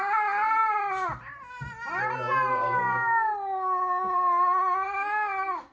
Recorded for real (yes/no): yes